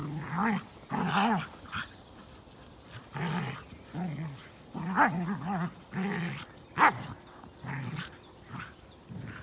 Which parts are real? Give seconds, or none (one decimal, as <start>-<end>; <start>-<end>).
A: 0.0-9.4

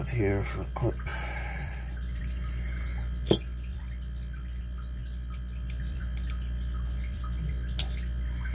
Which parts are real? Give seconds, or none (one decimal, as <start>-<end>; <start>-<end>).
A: 0.0-1.1; 2.2-3.7; 4.6-5.0; 7.5-8.5

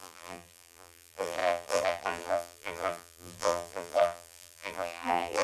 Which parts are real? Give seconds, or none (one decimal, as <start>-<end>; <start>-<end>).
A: none

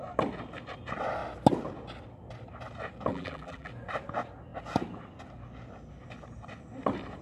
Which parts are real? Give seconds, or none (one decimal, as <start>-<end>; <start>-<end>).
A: 0.0-3.1; 3.7-7.2